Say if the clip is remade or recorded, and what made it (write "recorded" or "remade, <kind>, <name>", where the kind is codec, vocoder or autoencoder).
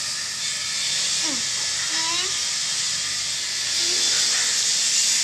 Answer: recorded